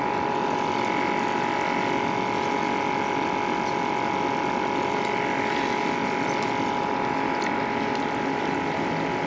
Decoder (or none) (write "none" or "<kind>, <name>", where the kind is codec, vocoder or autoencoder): none